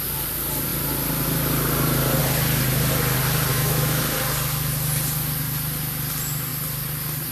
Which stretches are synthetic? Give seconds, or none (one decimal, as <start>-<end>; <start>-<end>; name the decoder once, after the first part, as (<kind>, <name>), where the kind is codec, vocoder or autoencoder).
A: 3.5-4.0 (autoencoder, DAC-VAE)